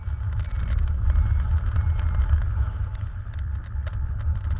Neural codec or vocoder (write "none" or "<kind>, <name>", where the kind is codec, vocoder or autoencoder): none